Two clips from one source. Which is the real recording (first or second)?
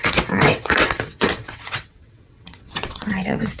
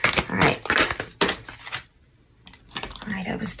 second